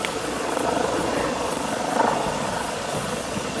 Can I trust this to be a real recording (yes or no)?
no